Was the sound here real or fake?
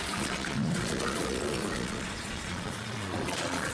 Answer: fake